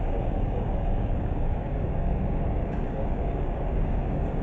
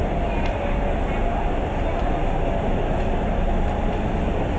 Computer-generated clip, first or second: first